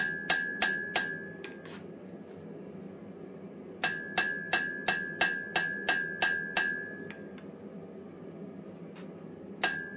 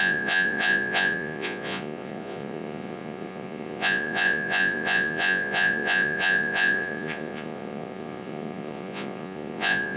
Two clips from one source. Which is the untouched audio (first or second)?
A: first